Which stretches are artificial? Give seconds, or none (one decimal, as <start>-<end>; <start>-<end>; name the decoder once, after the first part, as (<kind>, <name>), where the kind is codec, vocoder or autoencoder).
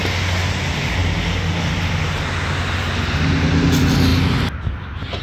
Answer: none